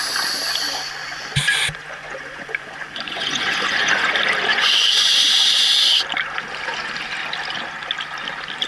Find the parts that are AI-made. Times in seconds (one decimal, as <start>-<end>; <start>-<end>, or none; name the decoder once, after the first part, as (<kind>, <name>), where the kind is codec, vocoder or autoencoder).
1.0-4.1 (vocoder, Vocos); 4.5-5.2